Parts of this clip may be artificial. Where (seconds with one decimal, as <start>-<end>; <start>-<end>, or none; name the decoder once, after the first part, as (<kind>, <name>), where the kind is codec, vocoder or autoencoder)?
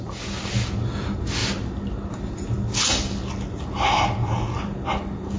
none